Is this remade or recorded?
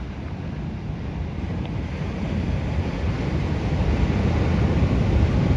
recorded